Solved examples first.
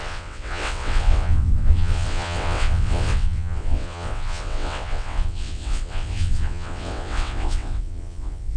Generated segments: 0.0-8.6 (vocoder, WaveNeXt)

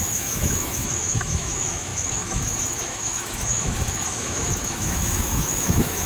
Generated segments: 0.0-6.1 (autoencoder, DAC-VAE)

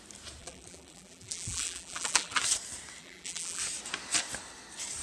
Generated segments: 0.4-2.4 (vocoder, BigVGAN v2); 3.0-3.6

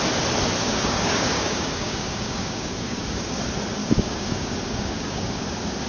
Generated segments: 0.6-3.4 (codec, DAC); 3.8-5.4

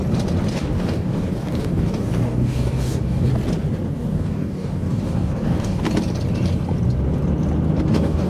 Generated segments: 0.5-3.3 (codec, DAC); 3.9-5.8; 7.9-8.3

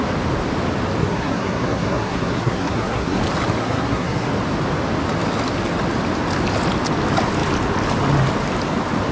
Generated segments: 1.0-3.2 (codec, SNAC); 3.6-4.3

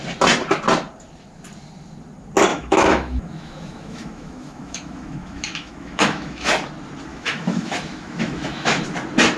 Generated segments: 2.5-6.5 (autoencoder, DAC-VAE); 7.1-8.8

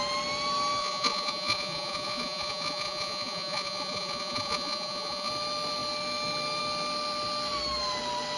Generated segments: 0.8-5.3 (vocoder, Vocos)